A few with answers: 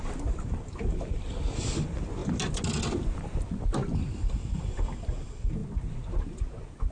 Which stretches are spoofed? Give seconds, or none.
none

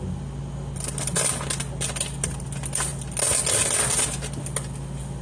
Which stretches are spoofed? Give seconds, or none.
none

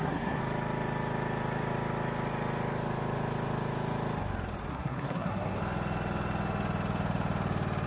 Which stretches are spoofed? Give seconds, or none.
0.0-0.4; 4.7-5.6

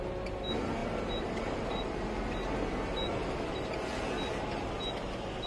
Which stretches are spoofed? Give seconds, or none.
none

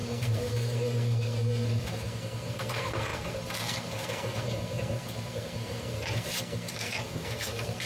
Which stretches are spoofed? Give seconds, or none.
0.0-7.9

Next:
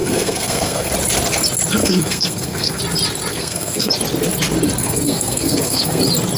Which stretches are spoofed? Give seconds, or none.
0.0-0.9; 1.8-2.8; 3.3-3.9; 4.8-6.0

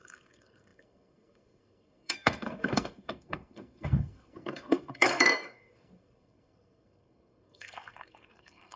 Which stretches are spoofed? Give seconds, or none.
0.0-8.8

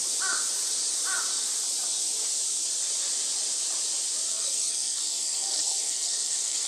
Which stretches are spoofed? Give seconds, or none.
4.3-6.7